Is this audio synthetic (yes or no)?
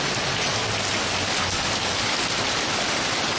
no